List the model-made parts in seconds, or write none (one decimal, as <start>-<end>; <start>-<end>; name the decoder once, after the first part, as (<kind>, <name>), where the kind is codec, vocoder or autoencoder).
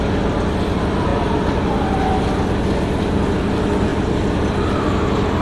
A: 3.9-4.8 (vocoder, BigVGAN v2)